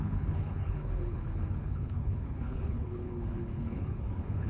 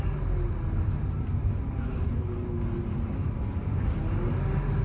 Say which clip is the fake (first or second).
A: first